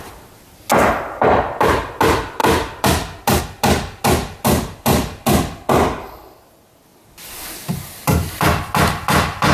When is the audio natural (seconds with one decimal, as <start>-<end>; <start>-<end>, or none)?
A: 0.0-2.4; 3.4-9.5